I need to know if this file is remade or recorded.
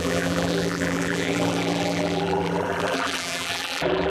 remade